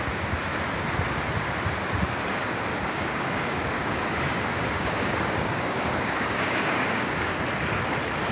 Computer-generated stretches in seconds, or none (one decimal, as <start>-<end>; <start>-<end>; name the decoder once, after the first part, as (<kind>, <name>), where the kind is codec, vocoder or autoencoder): 2.7-7.4 (codec, DAC)